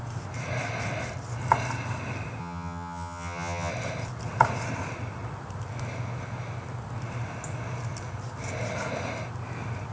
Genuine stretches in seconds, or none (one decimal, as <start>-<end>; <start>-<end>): 0.0-2.4; 3.7-9.9